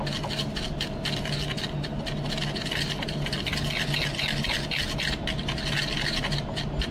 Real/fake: real